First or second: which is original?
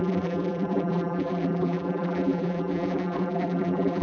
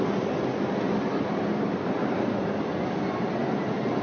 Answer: second